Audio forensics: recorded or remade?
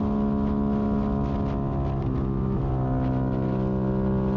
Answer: recorded